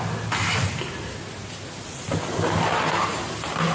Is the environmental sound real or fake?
real